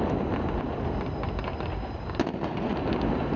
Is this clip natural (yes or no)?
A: yes